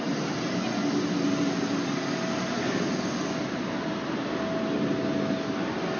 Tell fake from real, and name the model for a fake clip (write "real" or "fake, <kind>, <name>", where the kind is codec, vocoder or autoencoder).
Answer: real